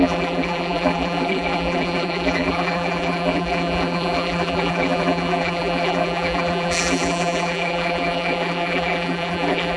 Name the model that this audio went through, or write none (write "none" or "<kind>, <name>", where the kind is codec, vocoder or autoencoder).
vocoder, BigVGAN v2